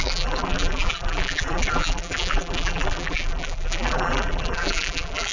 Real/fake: fake